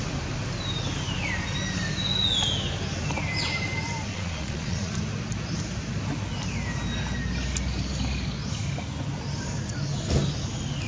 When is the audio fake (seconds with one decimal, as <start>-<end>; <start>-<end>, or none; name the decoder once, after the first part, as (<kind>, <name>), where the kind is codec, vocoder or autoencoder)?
4.1-4.9 (vocoder, Vocos)